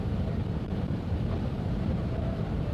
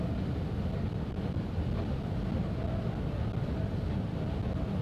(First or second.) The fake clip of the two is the first